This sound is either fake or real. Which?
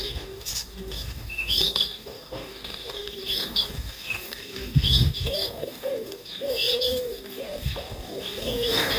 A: fake